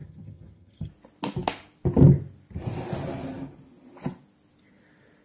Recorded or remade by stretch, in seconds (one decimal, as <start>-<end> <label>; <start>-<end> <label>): 0.0-0.9 remade; 0.9-5.2 recorded